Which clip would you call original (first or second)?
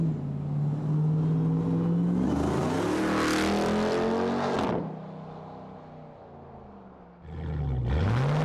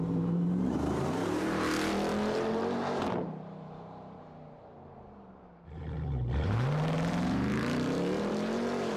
first